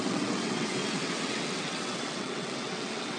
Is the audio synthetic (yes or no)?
yes